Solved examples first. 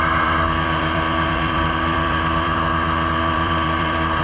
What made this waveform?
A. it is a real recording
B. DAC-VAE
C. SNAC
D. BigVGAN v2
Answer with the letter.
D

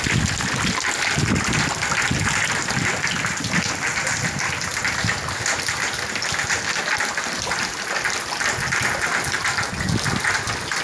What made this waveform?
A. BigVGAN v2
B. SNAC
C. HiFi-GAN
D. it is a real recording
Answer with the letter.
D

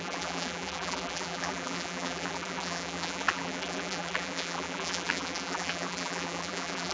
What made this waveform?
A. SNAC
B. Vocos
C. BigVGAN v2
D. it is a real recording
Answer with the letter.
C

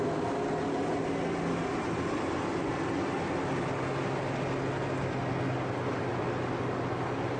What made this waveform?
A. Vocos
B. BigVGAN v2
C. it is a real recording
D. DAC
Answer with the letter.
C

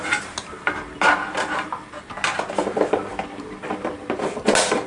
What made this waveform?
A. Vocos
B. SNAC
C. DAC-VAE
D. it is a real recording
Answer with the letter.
D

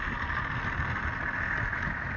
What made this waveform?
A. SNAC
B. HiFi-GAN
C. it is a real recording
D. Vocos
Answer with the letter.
C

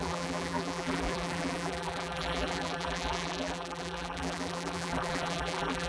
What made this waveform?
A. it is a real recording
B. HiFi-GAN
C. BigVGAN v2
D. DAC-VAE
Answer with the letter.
C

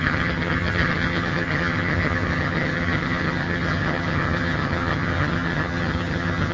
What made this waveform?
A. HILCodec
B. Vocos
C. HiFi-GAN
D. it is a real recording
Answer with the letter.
C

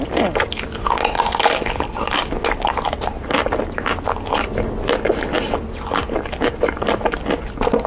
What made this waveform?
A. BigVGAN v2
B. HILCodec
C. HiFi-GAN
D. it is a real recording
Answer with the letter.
D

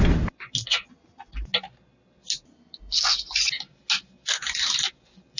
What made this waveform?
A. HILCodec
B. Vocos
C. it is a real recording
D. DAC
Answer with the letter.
C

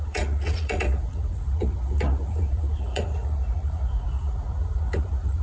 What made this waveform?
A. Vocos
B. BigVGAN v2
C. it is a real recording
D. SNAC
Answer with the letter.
A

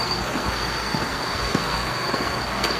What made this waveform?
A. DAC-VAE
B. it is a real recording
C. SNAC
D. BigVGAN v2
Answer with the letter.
C